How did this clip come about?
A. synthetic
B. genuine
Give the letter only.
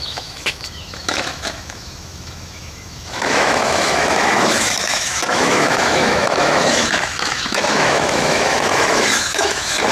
A